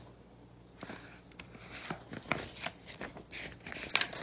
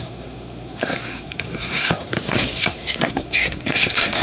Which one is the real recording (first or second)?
first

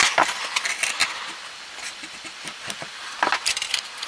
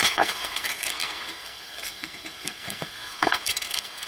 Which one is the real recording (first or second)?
first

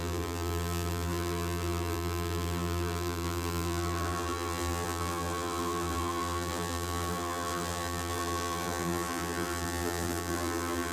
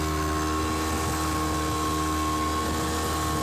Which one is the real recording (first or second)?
second